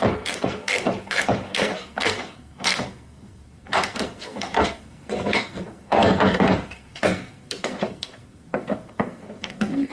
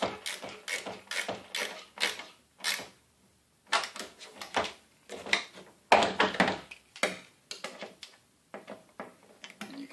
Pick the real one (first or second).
second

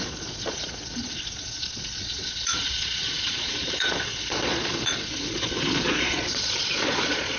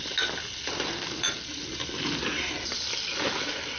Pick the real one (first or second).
second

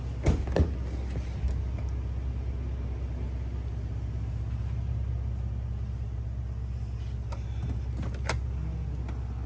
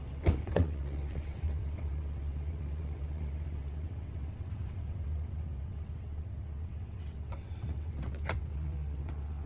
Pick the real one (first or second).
first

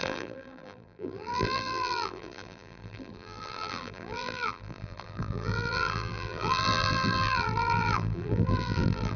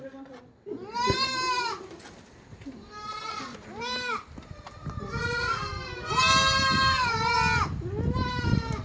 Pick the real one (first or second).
second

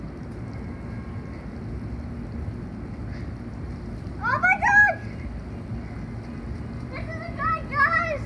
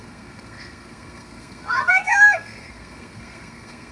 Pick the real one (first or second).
first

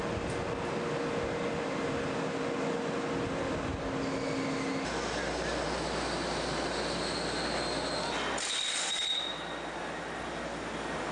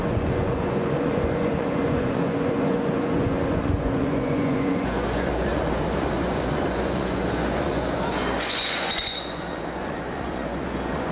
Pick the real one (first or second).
first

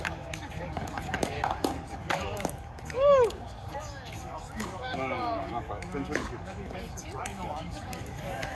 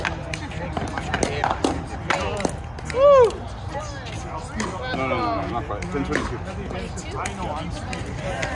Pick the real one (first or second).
second